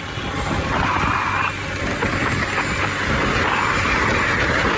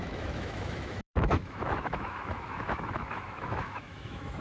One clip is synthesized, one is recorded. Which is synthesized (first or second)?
second